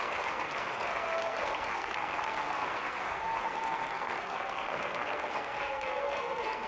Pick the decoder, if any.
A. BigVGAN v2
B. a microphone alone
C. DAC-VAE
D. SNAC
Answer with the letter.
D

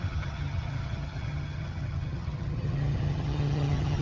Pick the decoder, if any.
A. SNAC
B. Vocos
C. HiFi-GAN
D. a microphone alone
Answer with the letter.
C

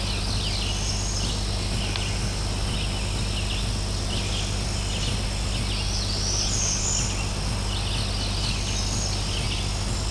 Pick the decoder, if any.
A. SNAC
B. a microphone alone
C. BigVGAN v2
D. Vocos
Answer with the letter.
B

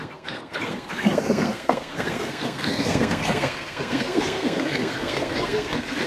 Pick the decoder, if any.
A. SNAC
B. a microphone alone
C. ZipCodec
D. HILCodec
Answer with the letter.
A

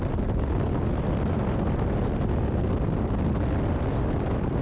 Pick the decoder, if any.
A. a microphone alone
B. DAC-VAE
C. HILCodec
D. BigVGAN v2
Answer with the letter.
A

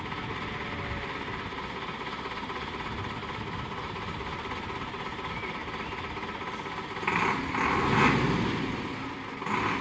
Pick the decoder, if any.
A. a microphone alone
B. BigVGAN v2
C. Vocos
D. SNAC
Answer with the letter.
A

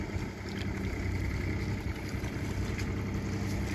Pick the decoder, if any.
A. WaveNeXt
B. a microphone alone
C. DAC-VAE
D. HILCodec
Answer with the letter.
B